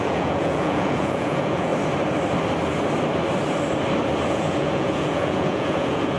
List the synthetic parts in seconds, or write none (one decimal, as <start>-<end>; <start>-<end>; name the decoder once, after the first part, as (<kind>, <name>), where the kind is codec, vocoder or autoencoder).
0.0-1.7 (vocoder, Vocos); 4.3-6.2